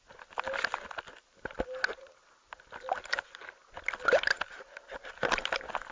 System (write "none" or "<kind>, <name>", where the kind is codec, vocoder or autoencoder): none